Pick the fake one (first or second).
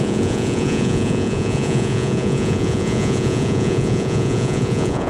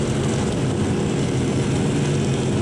first